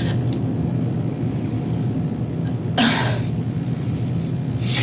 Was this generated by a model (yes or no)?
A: no